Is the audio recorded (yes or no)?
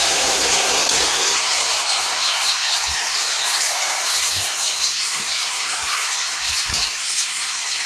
no